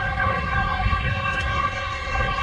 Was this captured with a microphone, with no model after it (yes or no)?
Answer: no